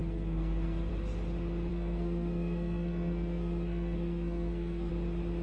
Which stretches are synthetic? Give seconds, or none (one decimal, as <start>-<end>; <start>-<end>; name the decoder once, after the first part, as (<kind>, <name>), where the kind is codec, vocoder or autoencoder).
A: 0.0-0.9 (codec, SNAC); 1.7-4.9

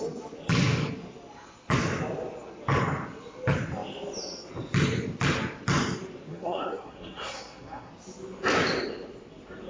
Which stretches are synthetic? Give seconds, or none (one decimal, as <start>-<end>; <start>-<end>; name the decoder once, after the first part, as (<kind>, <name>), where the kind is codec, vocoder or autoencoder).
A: 6.3-7.9 (codec, SNAC)